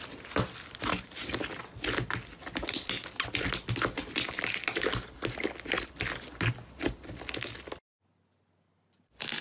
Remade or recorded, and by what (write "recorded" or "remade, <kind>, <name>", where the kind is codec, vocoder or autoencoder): recorded